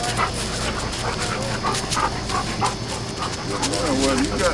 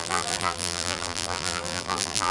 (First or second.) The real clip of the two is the first